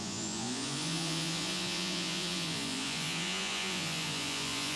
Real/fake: fake